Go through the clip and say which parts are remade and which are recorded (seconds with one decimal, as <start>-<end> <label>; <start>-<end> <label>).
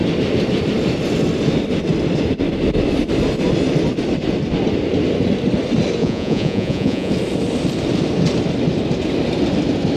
0.0-6.0 recorded; 6.0-7.1 remade; 7.1-10.0 recorded